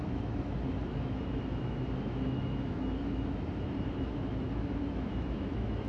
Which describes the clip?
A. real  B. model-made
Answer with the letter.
B